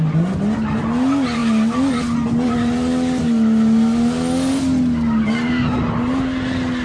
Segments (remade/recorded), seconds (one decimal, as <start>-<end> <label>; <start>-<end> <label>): 0.0-6.8 recorded